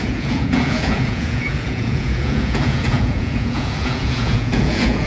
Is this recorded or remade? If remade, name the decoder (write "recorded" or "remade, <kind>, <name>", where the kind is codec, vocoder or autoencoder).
remade, vocoder, Vocos